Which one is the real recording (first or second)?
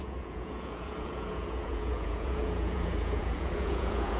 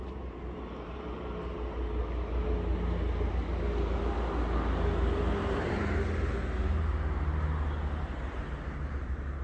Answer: second